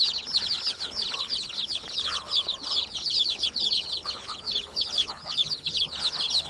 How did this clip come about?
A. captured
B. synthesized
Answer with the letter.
B